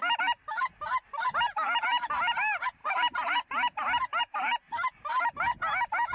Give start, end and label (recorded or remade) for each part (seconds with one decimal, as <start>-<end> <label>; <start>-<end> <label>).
0.0-6.1 recorded